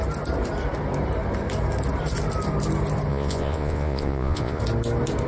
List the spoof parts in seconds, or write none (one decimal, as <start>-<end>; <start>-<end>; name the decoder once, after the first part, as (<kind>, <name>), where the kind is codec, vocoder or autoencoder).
3.1-4.6 (vocoder, Vocos)